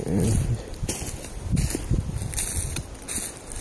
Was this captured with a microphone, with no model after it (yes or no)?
yes